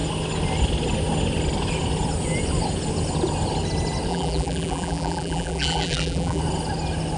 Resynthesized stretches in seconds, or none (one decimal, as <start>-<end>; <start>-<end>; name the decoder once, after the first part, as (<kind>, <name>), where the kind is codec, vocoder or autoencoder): 4.1-6.4 (vocoder, BigVGAN v2)